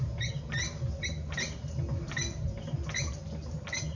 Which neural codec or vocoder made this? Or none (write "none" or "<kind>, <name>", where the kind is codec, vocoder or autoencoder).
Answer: none